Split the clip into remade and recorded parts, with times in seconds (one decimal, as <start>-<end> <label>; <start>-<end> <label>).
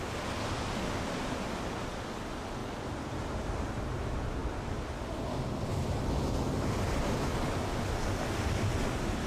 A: 0.0-2.6 recorded; 2.6-3.8 remade; 3.8-9.3 recorded